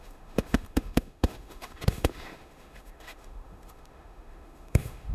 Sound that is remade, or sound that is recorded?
remade